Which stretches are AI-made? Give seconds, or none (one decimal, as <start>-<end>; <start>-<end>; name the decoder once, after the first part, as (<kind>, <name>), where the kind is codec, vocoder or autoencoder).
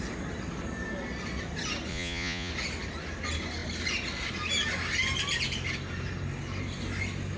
1.9-2.5 (vocoder, Vocos)